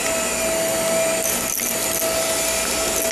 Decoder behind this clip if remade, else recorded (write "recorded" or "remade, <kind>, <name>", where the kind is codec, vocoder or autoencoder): recorded